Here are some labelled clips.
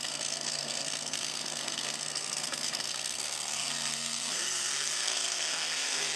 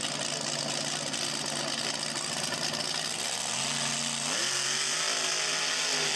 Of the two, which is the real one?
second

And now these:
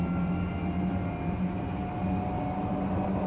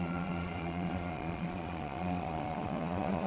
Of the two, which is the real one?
first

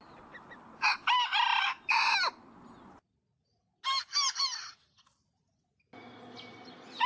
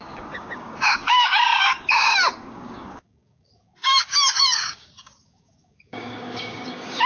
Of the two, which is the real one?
first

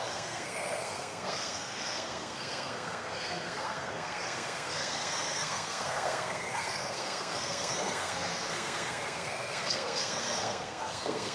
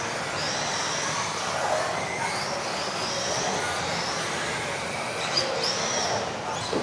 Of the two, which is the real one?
second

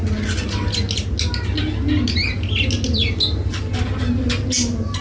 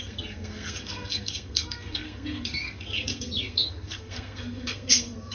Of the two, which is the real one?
first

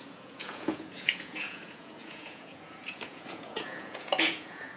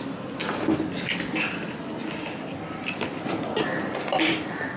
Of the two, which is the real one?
second